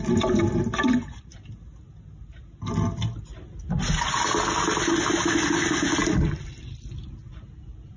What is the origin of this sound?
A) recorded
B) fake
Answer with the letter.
A